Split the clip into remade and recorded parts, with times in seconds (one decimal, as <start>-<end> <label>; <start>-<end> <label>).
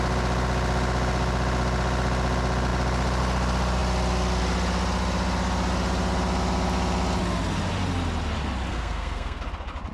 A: 0.0-8.7 recorded; 8.7-9.4 remade; 9.4-9.9 recorded